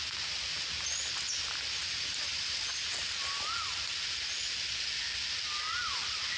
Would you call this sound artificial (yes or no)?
no